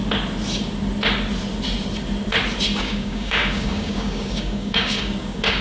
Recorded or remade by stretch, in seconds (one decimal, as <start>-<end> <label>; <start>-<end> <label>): 0.0-2.8 recorded; 2.8-5.6 remade